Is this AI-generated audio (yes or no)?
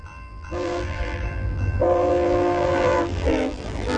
yes